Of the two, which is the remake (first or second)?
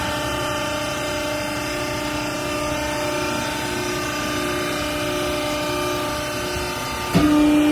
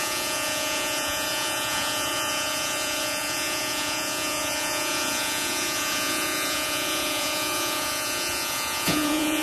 second